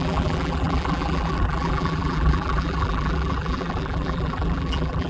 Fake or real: fake